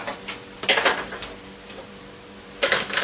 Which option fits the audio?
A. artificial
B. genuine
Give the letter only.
A